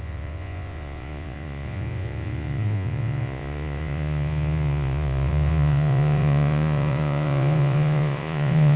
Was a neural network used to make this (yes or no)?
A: yes